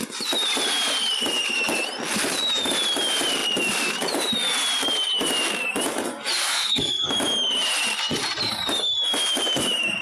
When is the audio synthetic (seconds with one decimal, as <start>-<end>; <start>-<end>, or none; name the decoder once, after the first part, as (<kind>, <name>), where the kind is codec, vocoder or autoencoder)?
6.4-7.1 (codec, SNAC)